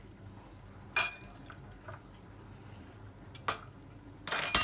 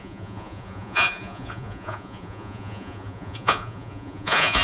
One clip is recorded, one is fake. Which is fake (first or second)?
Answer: second